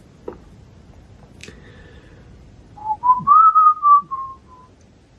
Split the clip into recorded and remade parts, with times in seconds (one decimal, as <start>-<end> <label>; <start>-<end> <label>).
0.0-1.4 recorded; 1.4-4.0 remade; 4.0-5.2 recorded